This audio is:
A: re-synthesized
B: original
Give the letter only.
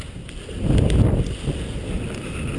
B